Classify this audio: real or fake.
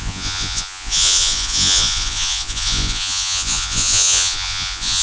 fake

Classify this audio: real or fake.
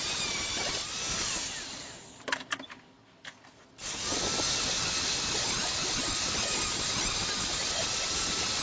real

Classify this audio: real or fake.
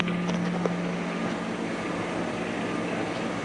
real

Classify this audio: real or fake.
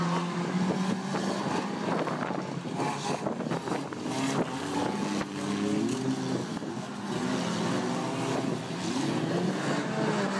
real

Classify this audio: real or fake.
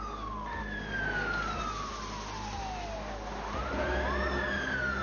real